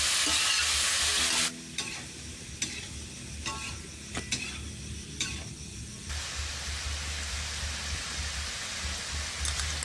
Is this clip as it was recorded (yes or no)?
yes